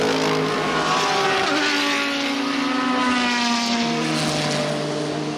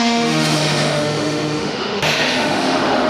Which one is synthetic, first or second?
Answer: second